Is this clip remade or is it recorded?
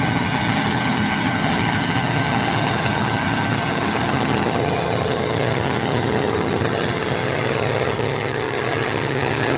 remade